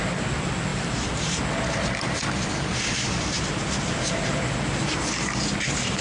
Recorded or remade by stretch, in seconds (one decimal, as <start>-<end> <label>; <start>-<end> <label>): 0.0-0.7 recorded; 0.7-1.4 remade; 1.4-6.0 recorded